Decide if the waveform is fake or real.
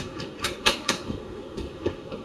fake